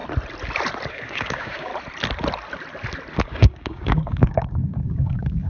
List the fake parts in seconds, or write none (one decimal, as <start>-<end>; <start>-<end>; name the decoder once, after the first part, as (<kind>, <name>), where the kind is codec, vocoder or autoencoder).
0.9-1.7 (codec, DAC); 3.3-5.5